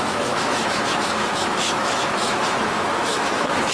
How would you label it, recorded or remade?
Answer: remade